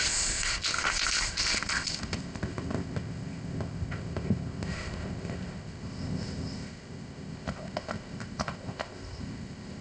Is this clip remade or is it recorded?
remade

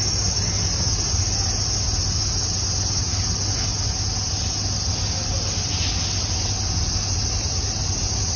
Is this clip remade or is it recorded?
recorded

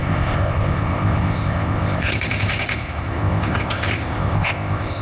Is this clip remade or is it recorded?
remade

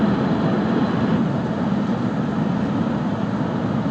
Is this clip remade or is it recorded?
recorded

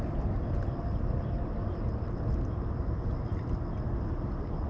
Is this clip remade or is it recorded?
recorded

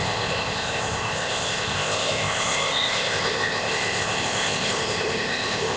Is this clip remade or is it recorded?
remade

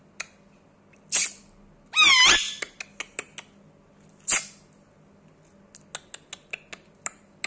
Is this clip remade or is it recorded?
recorded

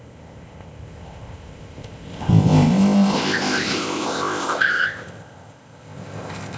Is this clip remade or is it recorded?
remade